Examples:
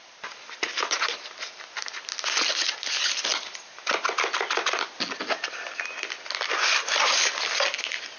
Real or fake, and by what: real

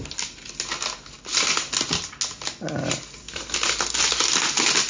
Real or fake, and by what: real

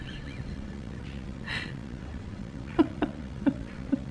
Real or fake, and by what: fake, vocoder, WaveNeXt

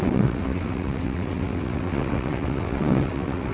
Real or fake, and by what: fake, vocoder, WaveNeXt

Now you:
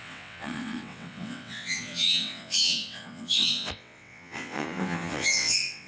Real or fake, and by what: fake, vocoder, WaveNeXt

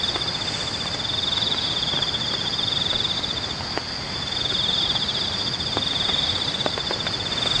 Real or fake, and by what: real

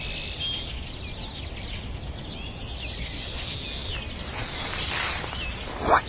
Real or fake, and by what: real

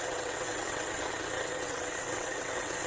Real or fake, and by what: fake, vocoder, WaveNeXt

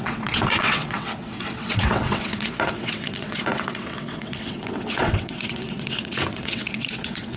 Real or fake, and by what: fake, vocoder, WaveNeXt